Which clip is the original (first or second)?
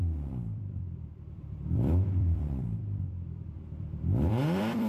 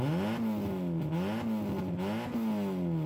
second